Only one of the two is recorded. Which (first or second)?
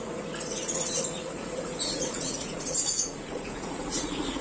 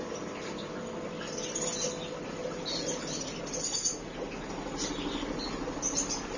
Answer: second